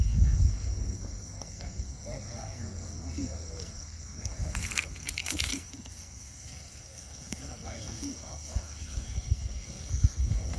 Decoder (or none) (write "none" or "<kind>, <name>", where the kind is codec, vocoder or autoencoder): codec, SNAC